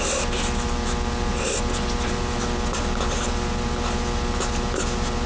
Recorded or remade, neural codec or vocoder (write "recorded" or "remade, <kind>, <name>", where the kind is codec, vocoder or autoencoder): recorded